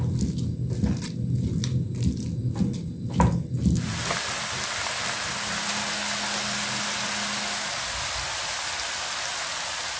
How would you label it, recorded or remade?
recorded